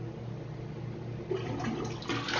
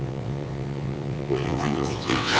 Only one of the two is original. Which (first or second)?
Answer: first